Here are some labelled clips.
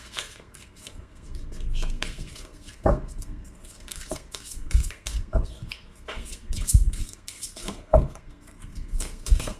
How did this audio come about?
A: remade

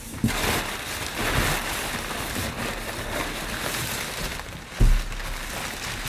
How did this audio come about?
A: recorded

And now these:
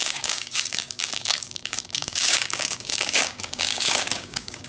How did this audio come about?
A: remade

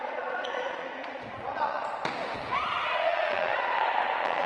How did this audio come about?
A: remade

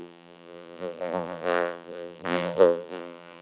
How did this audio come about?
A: remade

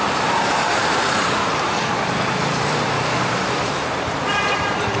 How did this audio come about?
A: remade